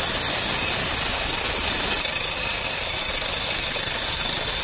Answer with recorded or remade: recorded